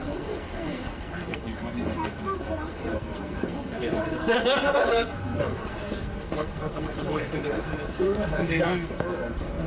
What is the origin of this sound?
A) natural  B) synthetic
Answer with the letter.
B